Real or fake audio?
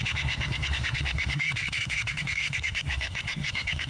fake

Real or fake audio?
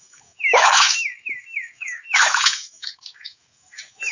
fake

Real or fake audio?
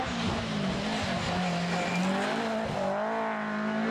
real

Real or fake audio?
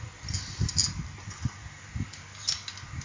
real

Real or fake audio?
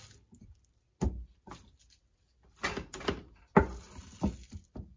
real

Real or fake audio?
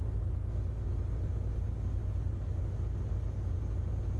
real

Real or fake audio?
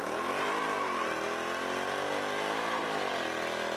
real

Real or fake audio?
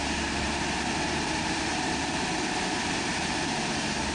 fake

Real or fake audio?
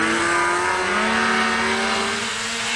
real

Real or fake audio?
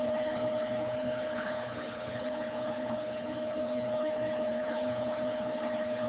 fake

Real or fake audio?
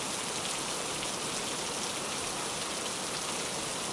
real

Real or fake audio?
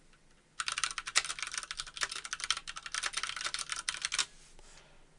real